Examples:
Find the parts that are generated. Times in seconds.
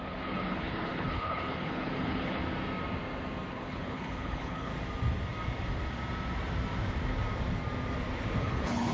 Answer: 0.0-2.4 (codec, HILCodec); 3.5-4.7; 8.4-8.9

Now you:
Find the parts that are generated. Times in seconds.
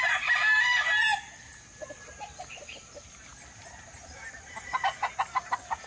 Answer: none